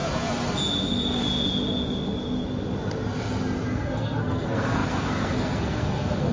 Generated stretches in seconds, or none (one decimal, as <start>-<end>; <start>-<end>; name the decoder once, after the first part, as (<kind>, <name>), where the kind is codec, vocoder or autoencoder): 3.7-6.3 (codec, SNAC)